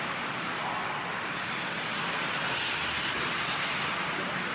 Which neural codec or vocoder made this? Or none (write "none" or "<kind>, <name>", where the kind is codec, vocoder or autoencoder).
none